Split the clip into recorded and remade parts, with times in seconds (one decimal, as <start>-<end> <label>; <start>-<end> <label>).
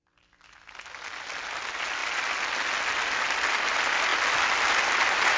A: 0.0-5.4 recorded